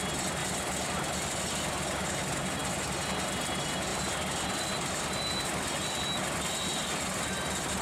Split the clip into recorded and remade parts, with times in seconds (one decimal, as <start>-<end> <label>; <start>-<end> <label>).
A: 0.0-7.8 recorded